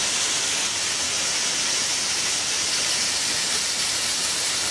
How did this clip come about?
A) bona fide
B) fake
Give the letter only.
A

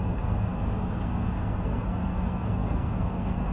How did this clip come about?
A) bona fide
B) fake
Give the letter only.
B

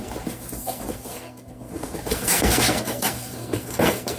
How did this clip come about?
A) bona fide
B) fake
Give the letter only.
B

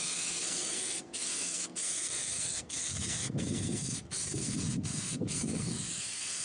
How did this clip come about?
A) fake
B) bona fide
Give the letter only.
A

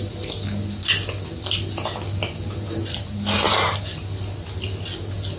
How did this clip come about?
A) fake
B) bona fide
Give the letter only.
B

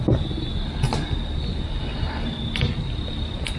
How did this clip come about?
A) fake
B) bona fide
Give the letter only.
B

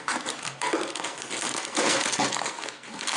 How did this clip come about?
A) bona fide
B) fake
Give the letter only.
B